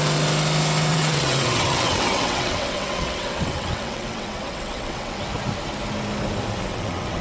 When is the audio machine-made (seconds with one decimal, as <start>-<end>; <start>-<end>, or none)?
0.9-5.2; 6.7-7.2